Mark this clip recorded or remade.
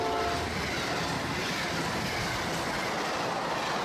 recorded